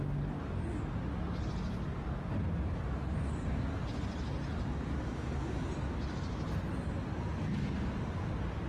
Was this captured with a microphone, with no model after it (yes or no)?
yes